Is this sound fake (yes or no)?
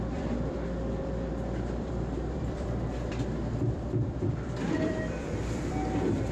yes